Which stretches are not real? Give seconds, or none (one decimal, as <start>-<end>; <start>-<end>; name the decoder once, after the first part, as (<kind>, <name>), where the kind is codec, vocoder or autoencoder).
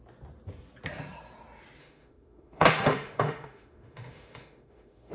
1.8-5.1 (autoencoder, DAC-VAE)